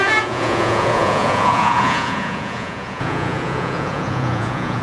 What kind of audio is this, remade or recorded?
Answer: remade